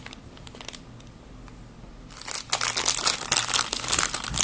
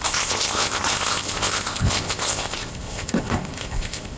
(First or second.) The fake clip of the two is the second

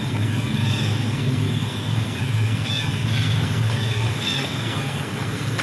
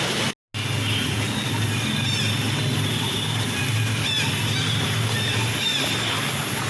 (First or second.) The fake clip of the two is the first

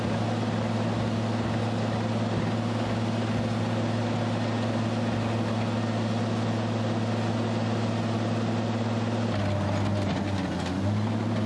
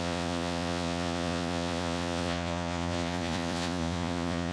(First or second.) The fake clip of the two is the second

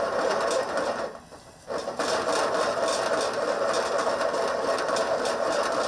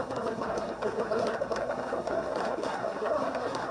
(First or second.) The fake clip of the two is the second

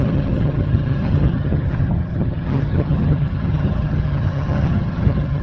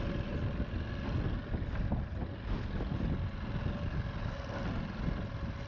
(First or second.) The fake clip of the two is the first